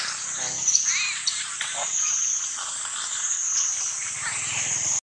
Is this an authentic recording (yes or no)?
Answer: yes